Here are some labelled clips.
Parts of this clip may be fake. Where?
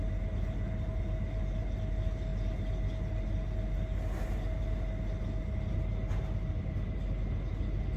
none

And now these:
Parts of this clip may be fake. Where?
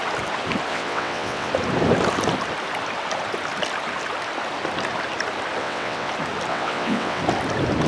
0.7-1.5 (vocoder, WaveNeXt); 5.6-6.1; 6.5-7.2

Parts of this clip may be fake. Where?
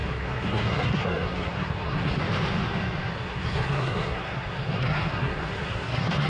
0.0-2.2 (codec, SNAC); 3.1-6.3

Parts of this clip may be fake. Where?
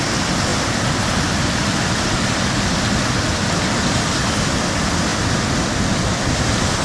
none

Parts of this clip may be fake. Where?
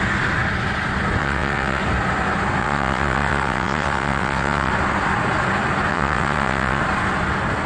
1.2-1.8 (vocoder, WaveNeXt); 2.6-4.7; 5.9-6.8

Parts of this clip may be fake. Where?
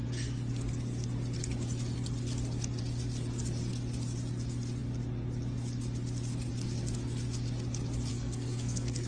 8.1-9.1 (codec, SNAC)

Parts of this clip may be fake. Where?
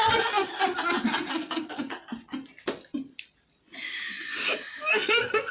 0.0-0.5 (codec, SNAC); 1.3-1.9; 4.9-5.5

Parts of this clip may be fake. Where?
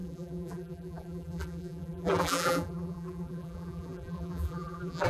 0.0-5.1 (vocoder, BigVGAN v2)